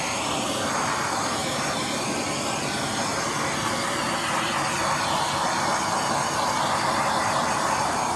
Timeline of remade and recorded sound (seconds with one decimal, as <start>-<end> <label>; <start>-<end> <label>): 0.0-1.4 recorded; 1.4-2.0 remade; 2.0-8.2 recorded